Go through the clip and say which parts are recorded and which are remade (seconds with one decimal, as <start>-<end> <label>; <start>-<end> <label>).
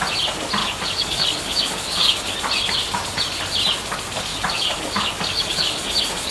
0.0-0.6 recorded; 0.6-2.2 remade; 2.2-4.3 recorded; 4.3-6.3 remade